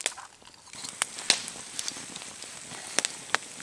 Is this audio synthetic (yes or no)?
no